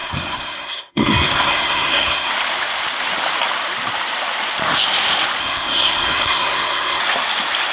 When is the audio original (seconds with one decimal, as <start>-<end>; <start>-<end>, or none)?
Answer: 2.3-5.4; 7.0-7.7